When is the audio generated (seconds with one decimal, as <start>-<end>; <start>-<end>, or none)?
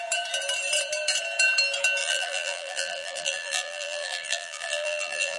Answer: 2.0-5.4